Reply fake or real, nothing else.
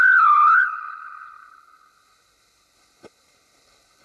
fake